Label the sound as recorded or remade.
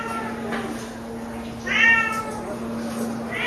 recorded